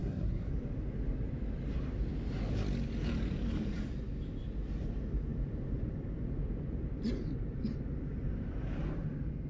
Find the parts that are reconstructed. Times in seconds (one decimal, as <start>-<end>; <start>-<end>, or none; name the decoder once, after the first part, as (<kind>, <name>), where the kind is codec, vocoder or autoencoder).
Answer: 0.0-0.5 (codec, SNAC)